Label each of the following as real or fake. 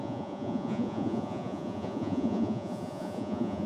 fake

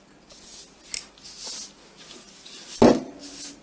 real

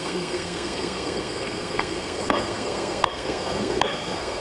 fake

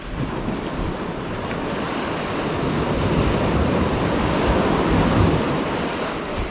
real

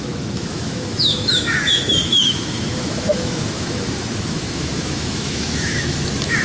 fake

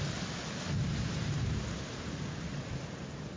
real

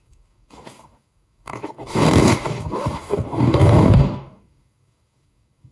fake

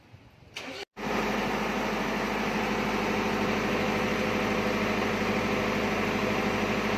real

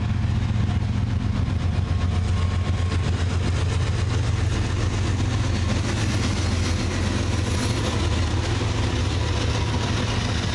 real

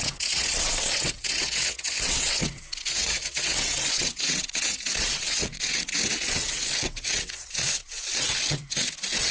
fake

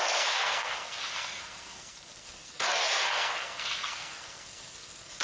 fake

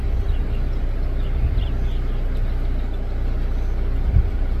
real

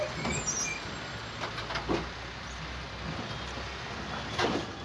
real